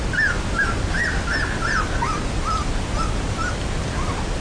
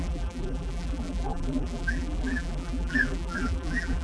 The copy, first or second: second